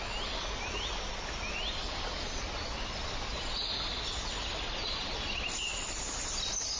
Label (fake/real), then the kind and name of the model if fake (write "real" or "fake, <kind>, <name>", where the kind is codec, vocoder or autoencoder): real